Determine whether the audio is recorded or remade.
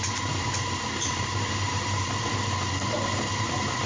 remade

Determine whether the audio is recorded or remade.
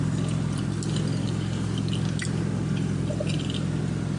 recorded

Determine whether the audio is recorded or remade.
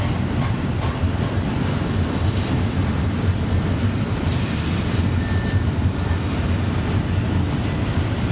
remade